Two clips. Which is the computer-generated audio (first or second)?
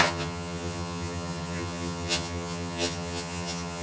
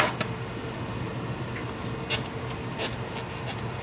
first